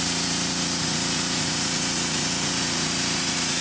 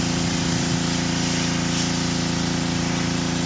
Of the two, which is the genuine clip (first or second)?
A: second